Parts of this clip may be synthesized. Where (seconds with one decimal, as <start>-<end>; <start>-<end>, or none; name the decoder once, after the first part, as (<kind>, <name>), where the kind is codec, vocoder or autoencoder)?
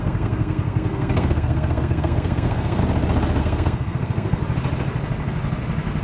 0.0-2.8 (codec, SNAC); 3.4-4.4